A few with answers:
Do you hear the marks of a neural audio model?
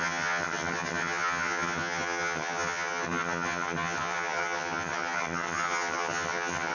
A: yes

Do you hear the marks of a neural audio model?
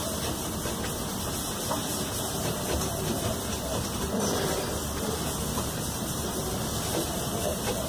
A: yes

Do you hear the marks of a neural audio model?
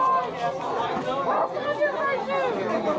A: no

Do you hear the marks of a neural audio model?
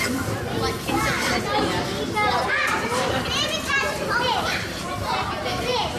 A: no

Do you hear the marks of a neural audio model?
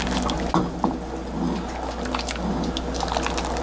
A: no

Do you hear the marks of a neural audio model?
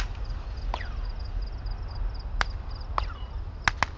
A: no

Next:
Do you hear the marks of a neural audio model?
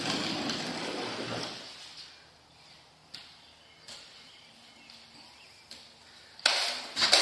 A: no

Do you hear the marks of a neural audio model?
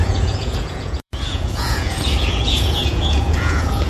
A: yes